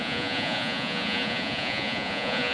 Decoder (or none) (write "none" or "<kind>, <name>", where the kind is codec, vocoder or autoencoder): vocoder, Vocos